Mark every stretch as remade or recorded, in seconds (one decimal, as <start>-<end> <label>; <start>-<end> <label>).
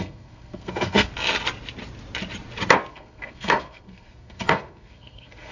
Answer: 0.0-1.1 remade; 1.1-2.9 recorded; 2.9-5.5 remade